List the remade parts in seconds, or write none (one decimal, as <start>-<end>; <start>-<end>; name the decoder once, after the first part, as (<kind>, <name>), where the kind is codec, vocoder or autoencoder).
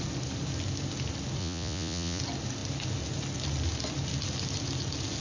1.4-2.2 (vocoder, Vocos)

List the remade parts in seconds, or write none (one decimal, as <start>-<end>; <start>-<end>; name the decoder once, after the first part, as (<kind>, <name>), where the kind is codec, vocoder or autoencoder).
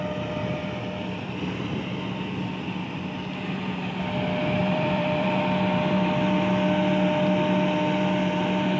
4.6-5.4 (vocoder, BigVGAN v2)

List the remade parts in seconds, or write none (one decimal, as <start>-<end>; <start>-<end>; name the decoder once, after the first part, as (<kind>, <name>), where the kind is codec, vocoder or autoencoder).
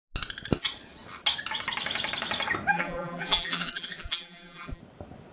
2.7-4.8 (vocoder, BigVGAN v2)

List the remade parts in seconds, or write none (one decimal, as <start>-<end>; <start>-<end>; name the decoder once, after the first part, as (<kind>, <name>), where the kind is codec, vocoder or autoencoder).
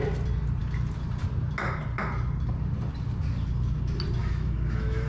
4.2-5.1 (autoencoder, DAC-VAE)